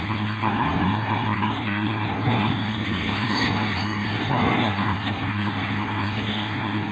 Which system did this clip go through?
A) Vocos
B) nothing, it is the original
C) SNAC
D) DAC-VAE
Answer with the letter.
C